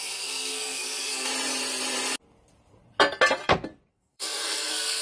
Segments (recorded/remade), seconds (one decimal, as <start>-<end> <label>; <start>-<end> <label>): 0.0-1.3 remade; 1.3-3.9 recorded; 3.9-5.0 remade